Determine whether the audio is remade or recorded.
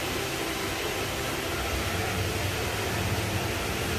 recorded